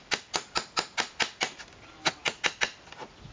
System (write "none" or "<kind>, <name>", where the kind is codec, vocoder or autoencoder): none